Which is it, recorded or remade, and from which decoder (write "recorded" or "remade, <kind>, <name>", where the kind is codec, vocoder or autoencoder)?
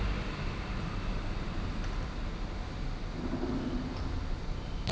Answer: recorded